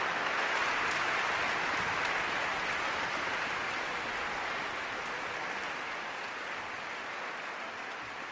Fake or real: real